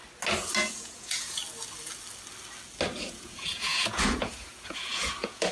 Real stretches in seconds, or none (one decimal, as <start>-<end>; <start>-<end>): 0.0-0.7; 1.4-3.0